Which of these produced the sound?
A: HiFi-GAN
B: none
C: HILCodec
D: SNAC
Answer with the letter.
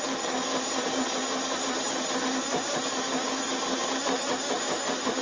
B